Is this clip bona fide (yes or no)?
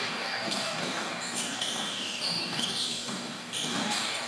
no